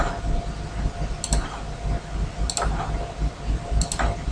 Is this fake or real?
real